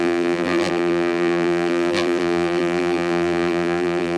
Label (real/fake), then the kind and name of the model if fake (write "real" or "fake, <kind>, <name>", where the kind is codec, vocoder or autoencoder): fake, vocoder, BigVGAN v2